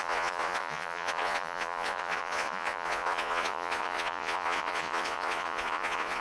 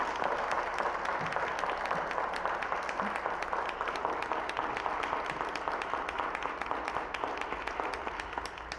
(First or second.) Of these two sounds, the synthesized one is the first